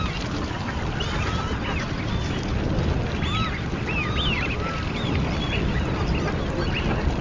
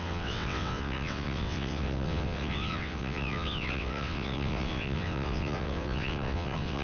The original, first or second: first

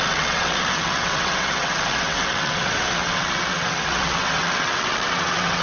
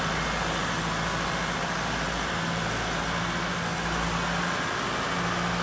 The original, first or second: second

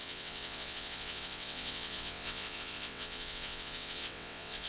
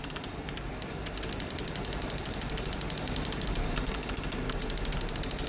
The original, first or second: second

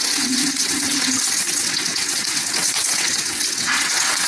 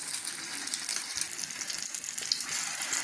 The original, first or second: second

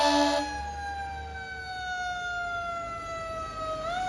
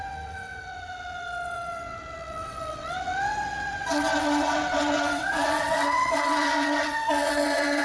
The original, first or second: first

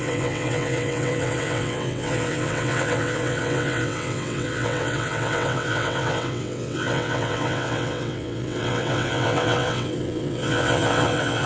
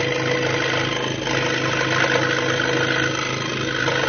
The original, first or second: second